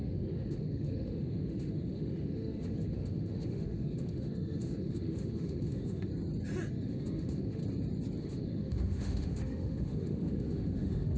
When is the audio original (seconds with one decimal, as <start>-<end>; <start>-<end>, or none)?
6.1-6.7; 7.6-8.2